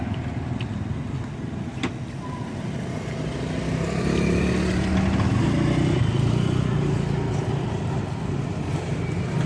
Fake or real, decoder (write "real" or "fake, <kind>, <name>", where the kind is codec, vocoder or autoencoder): real